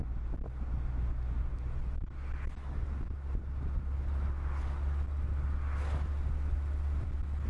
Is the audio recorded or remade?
recorded